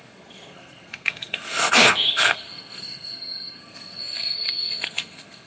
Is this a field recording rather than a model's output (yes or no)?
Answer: no